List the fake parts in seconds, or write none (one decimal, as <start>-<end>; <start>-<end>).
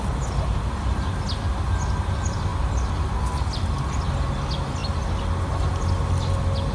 none